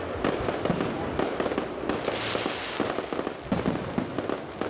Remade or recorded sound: recorded